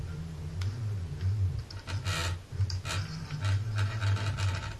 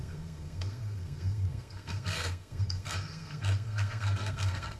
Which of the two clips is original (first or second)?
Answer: first